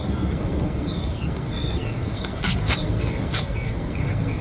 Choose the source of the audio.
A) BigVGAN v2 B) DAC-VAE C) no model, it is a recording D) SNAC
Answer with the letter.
D